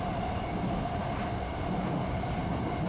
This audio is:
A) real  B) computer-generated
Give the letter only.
A